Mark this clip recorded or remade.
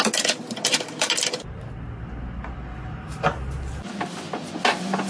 recorded